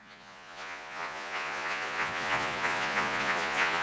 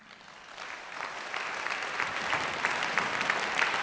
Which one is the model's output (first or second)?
first